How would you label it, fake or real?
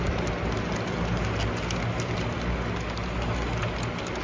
real